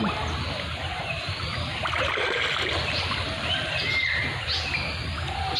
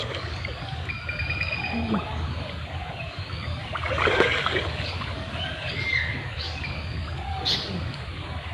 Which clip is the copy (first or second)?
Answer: second